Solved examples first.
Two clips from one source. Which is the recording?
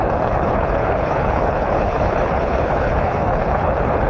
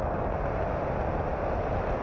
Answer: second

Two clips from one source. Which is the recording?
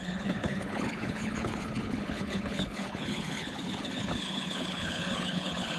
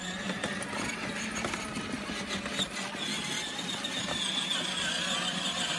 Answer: second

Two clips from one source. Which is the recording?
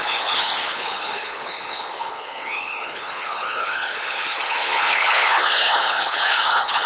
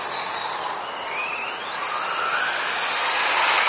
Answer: second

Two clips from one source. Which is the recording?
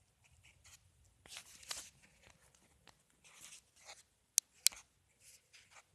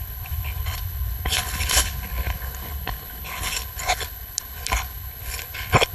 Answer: first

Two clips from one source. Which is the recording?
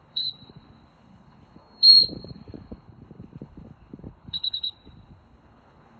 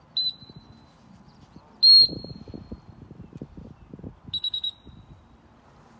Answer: second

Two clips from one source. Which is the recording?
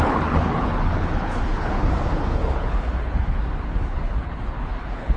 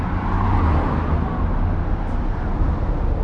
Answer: second